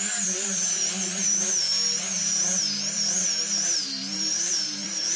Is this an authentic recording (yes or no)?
no